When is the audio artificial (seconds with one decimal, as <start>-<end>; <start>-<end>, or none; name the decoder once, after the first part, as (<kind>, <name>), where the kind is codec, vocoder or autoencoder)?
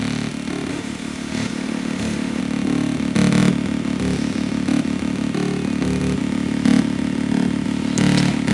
0.7-2.4 (autoencoder, DAC-VAE)